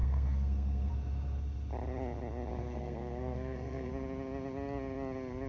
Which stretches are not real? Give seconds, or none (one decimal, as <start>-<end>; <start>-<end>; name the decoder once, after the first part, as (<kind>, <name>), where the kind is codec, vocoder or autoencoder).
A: 0.0-0.9 (codec, SNAC); 2.5-3.9